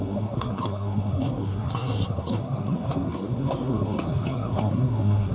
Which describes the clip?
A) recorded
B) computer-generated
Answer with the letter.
B